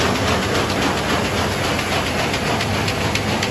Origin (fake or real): real